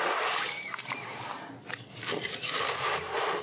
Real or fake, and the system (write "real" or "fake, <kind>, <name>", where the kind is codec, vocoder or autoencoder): real